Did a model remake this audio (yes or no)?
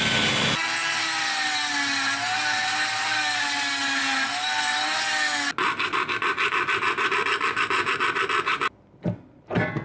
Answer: no